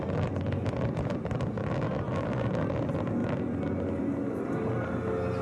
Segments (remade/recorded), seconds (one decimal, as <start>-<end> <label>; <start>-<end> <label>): 0.0-5.4 recorded